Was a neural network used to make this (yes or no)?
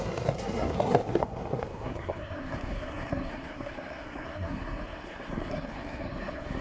yes